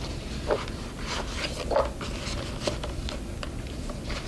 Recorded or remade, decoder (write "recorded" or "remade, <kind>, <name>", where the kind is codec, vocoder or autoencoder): recorded